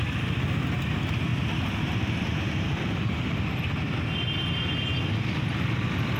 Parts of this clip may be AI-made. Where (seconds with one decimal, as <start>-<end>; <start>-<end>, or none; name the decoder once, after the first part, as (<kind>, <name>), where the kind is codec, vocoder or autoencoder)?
none